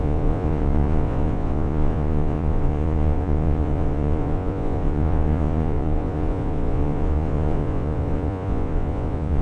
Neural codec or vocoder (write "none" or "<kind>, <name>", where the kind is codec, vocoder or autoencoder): vocoder, Vocos